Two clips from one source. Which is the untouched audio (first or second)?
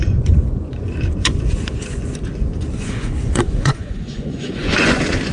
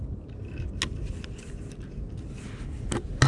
second